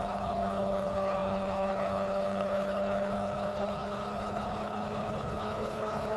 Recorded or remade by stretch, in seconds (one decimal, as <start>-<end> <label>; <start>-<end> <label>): 0.0-6.2 remade